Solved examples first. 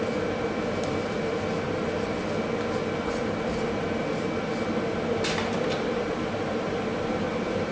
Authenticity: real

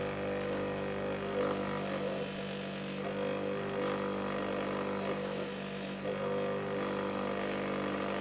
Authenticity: real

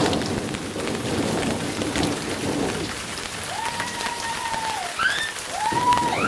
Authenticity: fake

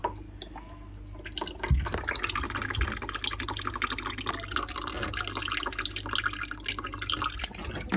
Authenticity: real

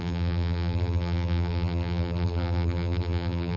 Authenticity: fake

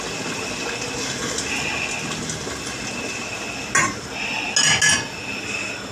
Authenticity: real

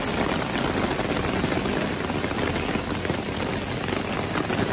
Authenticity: real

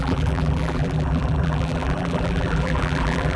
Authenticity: fake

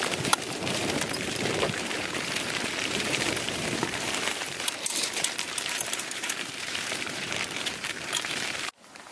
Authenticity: fake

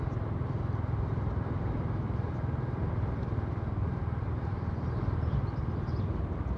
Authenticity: real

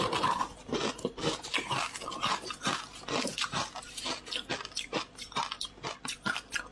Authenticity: real